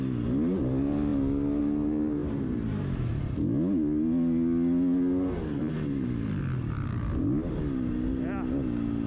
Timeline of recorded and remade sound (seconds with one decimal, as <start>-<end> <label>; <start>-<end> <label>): 0.0-9.1 recorded